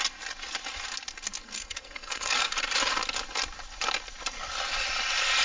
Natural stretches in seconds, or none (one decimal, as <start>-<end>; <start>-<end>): 0.0-1.4; 2.5-5.4